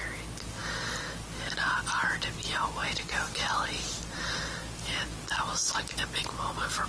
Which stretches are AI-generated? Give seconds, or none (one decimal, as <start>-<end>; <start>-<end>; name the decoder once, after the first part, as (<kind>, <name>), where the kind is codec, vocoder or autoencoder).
5.6-6.2 (vocoder, BigVGAN v2)